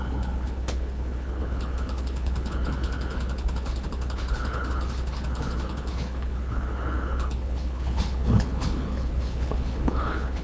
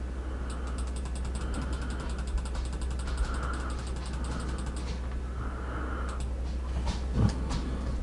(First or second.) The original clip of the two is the second